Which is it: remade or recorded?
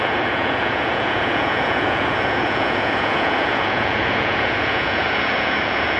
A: remade